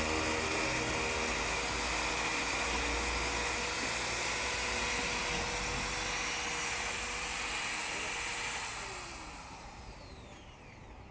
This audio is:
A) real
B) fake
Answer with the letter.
A